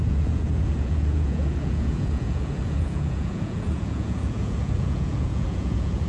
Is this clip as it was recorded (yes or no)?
no